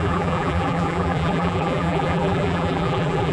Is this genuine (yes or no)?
no